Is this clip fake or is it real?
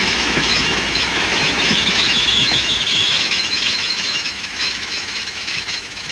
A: fake